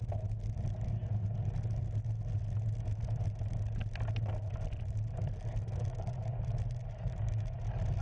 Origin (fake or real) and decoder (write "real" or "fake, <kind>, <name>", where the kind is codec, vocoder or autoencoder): real